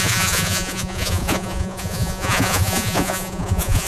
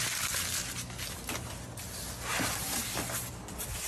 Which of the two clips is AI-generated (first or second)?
first